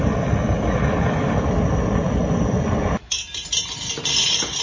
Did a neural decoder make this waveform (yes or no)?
yes